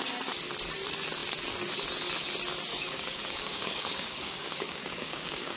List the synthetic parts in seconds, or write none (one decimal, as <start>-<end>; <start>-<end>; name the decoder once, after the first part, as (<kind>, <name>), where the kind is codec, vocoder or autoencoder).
2.7-5.6 (codec, DAC)